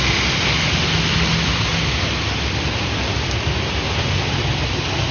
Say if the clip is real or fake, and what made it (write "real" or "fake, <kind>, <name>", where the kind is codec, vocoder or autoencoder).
real